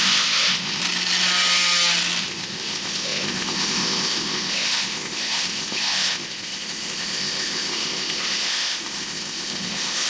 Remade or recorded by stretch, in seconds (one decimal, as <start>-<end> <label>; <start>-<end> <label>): 0.0-0.8 remade; 0.8-2.2 recorded; 2.2-10.1 remade